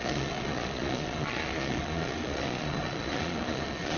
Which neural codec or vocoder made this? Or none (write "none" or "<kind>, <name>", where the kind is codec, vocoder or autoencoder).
vocoder, Vocos